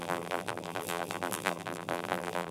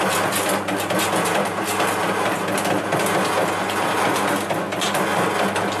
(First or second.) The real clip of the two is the second